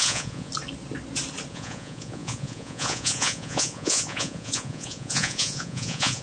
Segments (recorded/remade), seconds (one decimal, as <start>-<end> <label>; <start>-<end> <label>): 0.0-0.5 remade; 0.5-1.5 recorded; 1.5-6.2 remade